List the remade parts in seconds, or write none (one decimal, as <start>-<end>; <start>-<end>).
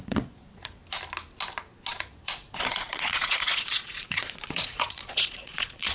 0.0-0.8; 1.9-5.9